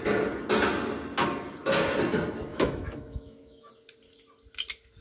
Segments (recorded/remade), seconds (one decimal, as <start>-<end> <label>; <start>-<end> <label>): 0.0-2.5 recorded; 2.5-3.7 remade; 3.7-5.0 recorded